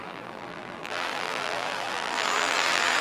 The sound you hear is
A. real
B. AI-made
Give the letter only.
B